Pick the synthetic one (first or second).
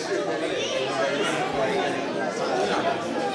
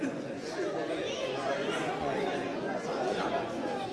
second